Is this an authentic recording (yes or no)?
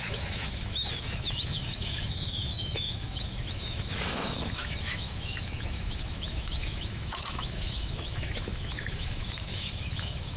no